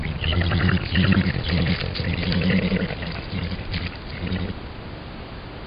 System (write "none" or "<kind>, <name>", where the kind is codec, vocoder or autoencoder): vocoder, BigVGAN v2